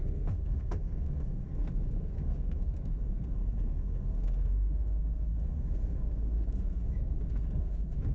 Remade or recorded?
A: remade